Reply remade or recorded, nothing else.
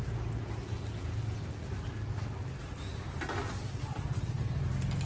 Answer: recorded